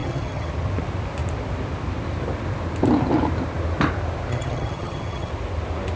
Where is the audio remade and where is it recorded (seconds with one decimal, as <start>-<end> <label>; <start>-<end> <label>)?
0.0-0.5 remade; 0.5-4.3 recorded; 4.3-5.3 remade; 5.3-6.0 recorded